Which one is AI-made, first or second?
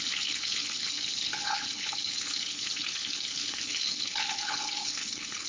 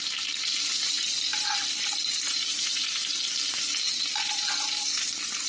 first